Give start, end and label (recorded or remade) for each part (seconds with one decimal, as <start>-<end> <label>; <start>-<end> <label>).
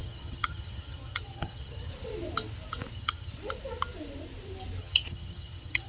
0.0-1.9 remade; 1.9-2.9 recorded; 2.9-3.3 remade; 3.3-4.8 recorded; 4.8-5.9 remade